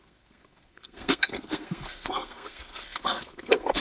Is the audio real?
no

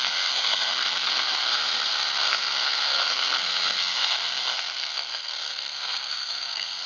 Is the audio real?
no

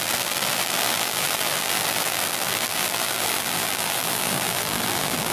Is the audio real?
no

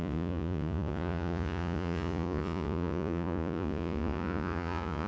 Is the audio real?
no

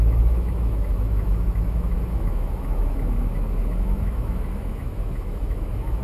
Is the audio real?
no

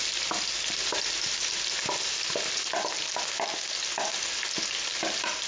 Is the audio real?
yes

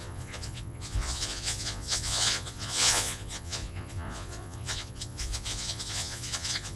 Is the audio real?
no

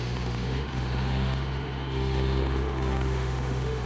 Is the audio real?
no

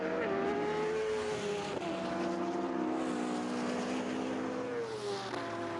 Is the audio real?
yes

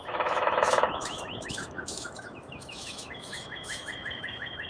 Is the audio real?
no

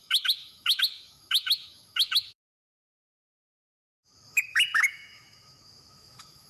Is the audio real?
no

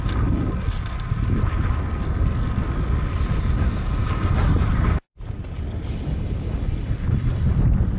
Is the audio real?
yes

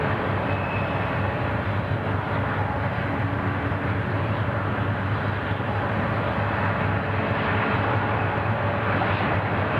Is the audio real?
yes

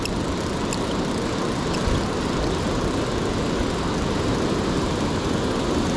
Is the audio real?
yes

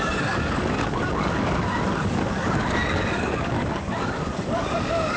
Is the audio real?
no